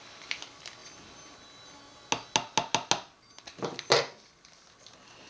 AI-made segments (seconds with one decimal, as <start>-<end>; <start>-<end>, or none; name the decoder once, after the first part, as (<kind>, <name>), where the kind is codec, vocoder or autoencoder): none